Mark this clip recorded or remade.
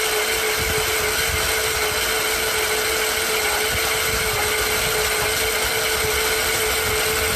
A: recorded